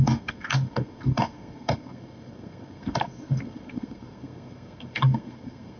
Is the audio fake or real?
fake